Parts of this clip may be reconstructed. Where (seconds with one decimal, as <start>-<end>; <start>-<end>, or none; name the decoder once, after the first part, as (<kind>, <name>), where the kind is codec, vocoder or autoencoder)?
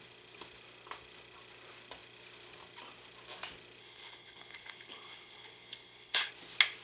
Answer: 3.8-6.3 (codec, HILCodec)